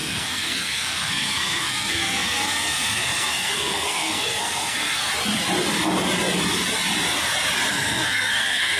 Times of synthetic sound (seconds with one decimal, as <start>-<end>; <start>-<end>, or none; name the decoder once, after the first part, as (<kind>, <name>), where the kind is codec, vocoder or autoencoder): 0.0-5.1 (codec, SNAC); 7.7-8.8

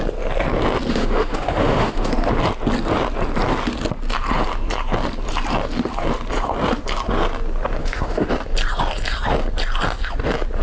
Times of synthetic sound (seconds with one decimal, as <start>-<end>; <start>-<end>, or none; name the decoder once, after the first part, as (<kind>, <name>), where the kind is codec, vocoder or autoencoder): 0.9-2.1 (autoencoder, DAC-VAE); 7.8-8.3

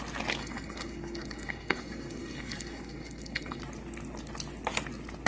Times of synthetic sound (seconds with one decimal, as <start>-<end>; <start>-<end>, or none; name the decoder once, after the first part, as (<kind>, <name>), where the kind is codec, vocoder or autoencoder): 0.4-3.6 (codec, SNAC)

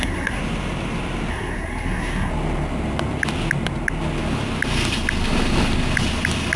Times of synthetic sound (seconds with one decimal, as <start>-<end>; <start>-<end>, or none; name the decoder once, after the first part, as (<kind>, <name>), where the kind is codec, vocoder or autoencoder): 0.0-0.4 (codec, SNAC); 1.3-2.3

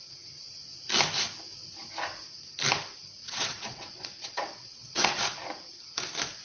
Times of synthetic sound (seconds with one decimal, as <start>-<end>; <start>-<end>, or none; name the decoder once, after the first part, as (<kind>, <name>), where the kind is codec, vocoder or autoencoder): 3.2-5.2 (vocoder, WaveNeXt)

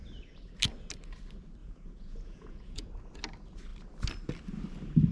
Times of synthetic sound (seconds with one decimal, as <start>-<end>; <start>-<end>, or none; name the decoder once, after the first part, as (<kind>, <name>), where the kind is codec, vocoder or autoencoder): 1.6-2.9 (vocoder, Vocos)

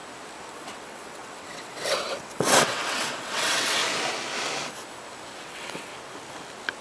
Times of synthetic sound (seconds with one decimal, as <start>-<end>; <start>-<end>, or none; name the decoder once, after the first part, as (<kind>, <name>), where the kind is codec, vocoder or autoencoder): 0.5-3.8 (vocoder, WaveNeXt); 5.4-5.9